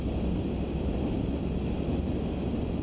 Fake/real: real